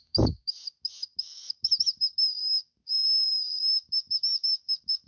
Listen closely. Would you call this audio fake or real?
fake